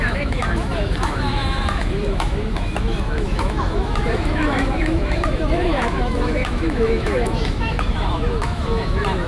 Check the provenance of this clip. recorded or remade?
remade